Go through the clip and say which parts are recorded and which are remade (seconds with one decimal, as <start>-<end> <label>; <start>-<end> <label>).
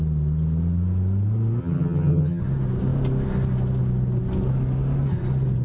0.0-1.6 recorded; 1.6-2.4 remade; 2.4-5.6 recorded